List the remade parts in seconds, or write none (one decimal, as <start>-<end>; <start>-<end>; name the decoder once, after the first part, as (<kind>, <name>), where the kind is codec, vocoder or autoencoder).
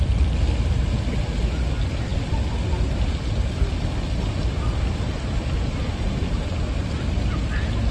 none